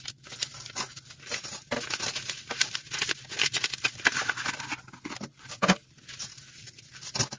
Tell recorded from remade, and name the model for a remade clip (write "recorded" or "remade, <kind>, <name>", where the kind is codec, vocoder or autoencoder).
recorded